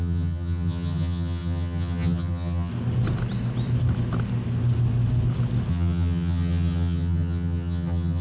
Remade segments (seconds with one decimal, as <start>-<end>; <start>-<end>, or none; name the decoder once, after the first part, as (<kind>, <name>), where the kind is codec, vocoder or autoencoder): 0.0-2.7 (vocoder, HiFi-GAN); 5.7-8.2